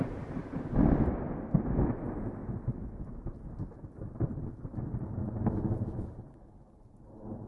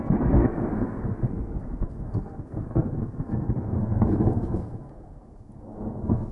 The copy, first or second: second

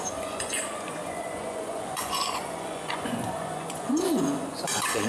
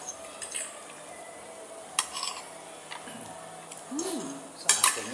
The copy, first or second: first